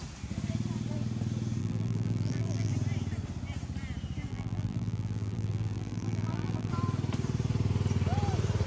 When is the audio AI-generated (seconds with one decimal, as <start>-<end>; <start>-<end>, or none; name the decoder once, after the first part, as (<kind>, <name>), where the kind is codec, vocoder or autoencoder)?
1.6-2.7 (vocoder, BigVGAN v2); 4.3-6.7